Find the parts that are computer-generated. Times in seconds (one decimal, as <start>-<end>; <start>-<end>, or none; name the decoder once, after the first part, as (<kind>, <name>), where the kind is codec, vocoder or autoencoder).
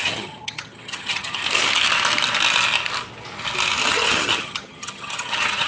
0.0-1.4 (vocoder, HiFi-GAN); 3.9-5.7